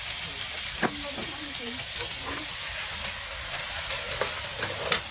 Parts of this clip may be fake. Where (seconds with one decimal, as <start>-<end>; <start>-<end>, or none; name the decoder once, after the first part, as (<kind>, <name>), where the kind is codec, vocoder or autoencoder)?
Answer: none